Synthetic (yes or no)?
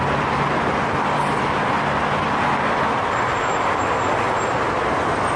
no